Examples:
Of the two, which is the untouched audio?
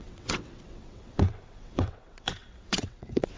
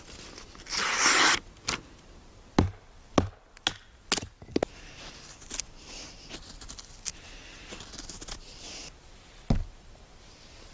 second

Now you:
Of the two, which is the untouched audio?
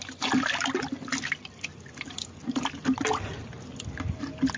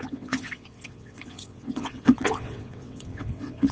first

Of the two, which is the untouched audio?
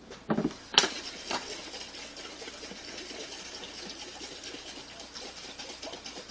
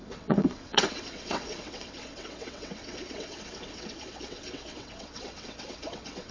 first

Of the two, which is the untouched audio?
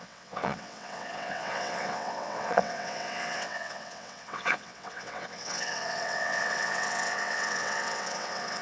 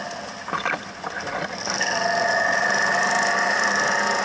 second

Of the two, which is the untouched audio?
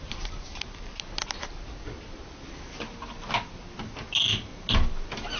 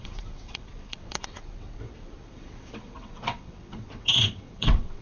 first